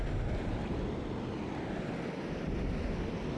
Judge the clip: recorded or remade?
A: recorded